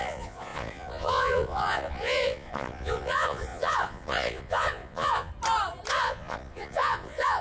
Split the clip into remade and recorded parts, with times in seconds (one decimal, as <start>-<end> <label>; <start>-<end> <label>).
0.0-5.3 remade; 5.3-5.9 recorded; 5.9-7.4 remade